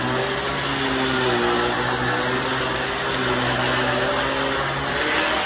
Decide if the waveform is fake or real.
real